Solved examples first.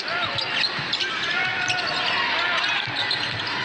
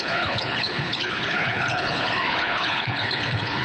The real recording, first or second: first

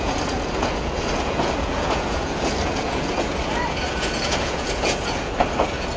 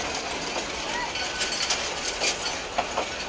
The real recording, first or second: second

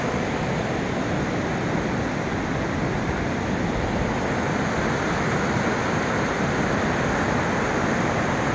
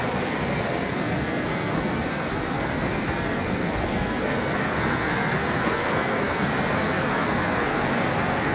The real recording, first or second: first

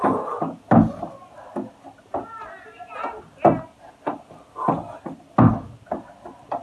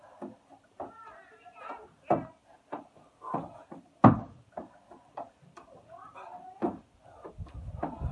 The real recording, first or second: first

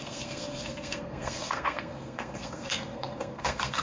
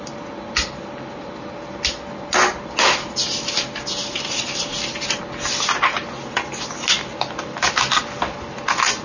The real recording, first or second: second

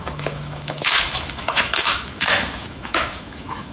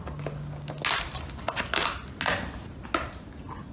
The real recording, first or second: second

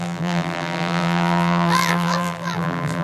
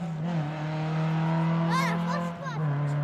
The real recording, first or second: second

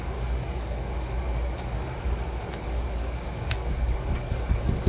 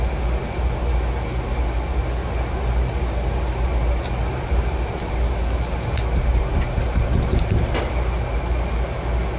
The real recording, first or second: second